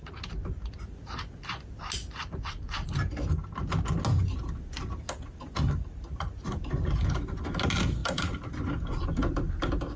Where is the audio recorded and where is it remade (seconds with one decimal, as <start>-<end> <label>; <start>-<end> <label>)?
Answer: 0.0-8.0 recorded; 8.0-9.0 remade; 9.0-10.0 recorded